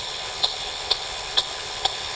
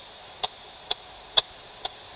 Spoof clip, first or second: first